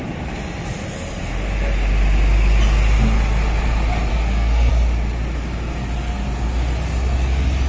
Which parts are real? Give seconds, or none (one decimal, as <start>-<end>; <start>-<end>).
0.0-4.1; 4.7-7.7

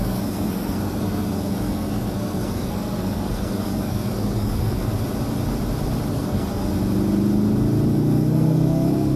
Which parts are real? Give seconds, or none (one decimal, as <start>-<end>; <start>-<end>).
4.9-6.1; 6.7-7.9